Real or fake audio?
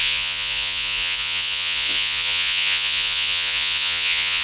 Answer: fake